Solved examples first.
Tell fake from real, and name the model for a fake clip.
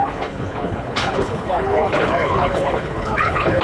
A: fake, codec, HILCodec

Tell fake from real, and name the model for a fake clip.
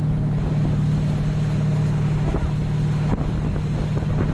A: real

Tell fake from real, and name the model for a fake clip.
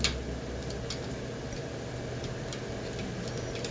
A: real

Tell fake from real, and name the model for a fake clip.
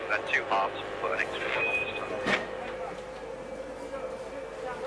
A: real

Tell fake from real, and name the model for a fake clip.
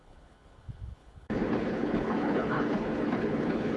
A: fake, codec, HILCodec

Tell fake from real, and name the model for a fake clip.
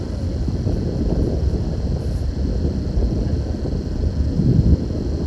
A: real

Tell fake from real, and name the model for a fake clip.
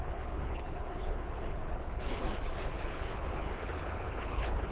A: fake, codec, HILCodec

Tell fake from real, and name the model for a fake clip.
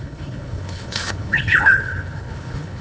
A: fake, codec, HILCodec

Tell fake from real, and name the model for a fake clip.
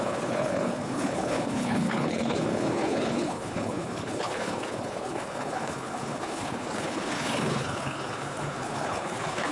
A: fake, codec, HILCodec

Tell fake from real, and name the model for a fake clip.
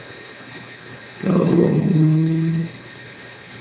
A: fake, codec, HILCodec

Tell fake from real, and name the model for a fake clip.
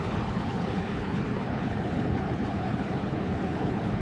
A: fake, codec, HILCodec